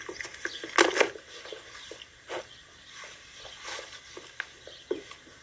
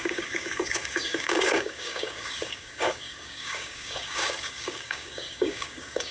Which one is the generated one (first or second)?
second